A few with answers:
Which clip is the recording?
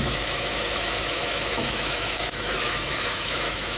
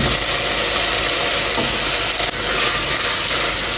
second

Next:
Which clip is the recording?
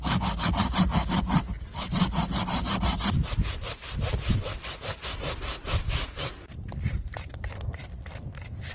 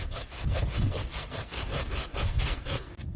first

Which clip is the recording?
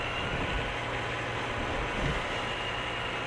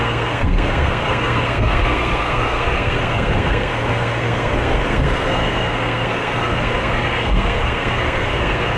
first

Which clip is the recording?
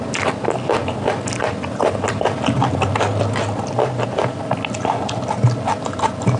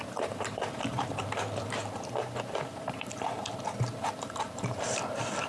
first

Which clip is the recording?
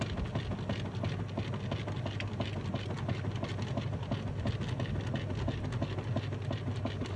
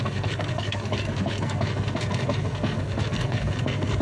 first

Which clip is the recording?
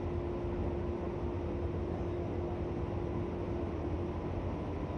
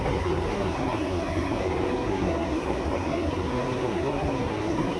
first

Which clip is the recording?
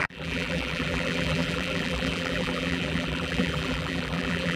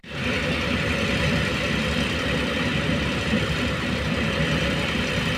second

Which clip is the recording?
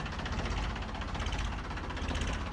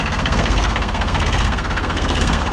first